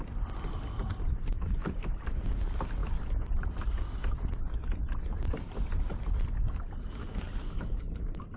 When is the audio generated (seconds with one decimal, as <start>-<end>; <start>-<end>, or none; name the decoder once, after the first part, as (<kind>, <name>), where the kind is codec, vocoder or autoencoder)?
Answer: 7.0-8.0 (codec, HILCodec)